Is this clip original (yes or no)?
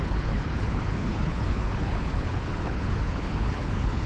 no